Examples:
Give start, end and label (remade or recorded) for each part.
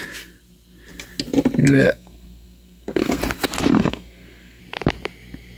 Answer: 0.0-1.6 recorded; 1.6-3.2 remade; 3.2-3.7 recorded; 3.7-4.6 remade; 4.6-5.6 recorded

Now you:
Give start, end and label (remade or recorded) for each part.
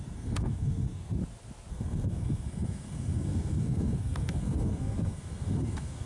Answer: 0.0-1.2 remade; 1.2-1.7 recorded; 1.7-6.1 remade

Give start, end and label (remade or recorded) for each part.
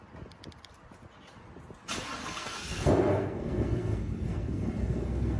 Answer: 0.0-2.2 recorded; 2.2-5.4 remade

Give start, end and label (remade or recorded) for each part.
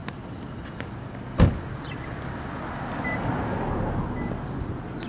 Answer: 0.0-5.1 recorded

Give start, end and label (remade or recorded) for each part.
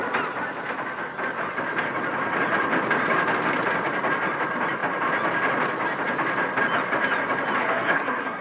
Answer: 0.0-7.6 recorded; 7.6-8.4 remade